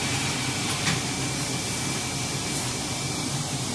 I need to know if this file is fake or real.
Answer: fake